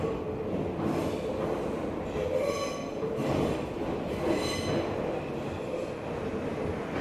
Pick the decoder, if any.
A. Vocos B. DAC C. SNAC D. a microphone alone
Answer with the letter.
D